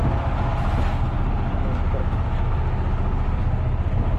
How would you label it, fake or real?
real